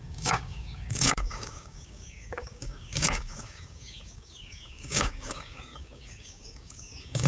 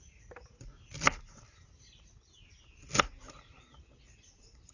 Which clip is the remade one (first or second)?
first